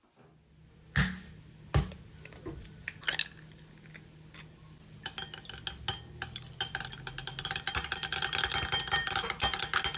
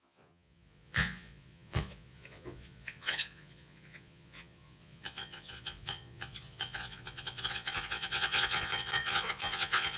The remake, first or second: second